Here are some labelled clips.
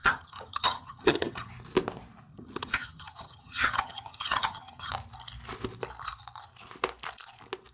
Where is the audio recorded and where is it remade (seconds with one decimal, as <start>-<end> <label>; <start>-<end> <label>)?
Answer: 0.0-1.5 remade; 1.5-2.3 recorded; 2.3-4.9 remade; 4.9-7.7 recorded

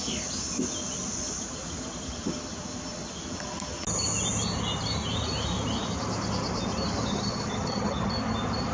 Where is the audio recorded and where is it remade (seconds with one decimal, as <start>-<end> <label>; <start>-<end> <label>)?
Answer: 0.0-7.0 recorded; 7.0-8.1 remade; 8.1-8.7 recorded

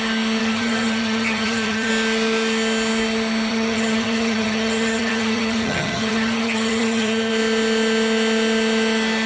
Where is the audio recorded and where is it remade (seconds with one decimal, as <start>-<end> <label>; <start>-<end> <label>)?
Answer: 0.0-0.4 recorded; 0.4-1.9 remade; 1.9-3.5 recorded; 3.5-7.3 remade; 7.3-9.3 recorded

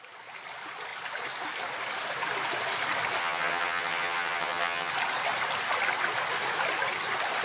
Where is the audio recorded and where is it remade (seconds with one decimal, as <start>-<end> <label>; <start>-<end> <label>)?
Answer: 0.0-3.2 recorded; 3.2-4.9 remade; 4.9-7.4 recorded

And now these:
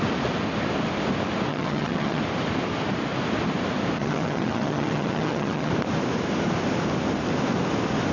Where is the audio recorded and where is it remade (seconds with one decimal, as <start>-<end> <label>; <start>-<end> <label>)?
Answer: 0.0-1.5 recorded; 1.5-2.2 remade; 2.2-4.0 recorded; 4.0-5.7 remade; 5.7-8.1 recorded

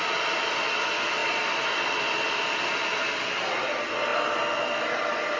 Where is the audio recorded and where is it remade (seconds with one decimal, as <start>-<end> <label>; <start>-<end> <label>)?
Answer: 0.0-5.4 recorded

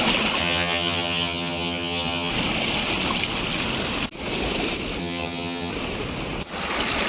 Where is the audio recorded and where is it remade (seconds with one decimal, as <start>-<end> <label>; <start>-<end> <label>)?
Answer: 0.0-0.4 recorded; 0.4-2.3 remade; 2.3-5.0 recorded; 5.0-5.7 remade; 5.7-7.1 recorded